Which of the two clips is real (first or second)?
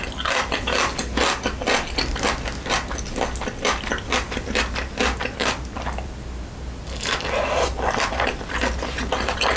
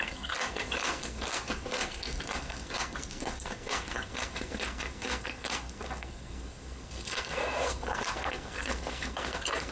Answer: first